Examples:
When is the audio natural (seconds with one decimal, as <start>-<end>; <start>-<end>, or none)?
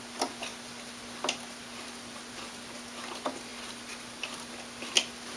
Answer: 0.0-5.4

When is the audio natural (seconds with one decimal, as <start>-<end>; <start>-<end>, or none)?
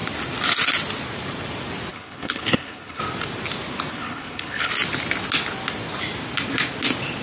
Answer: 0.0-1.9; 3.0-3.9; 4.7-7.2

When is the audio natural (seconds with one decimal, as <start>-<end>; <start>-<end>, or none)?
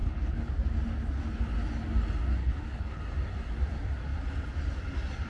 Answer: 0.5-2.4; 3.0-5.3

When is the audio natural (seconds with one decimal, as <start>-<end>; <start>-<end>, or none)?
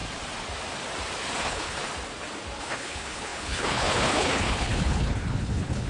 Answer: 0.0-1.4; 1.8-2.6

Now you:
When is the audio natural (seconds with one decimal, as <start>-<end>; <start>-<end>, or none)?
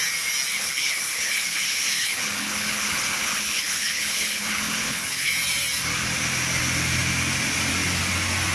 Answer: 0.0-0.5; 5.3-8.5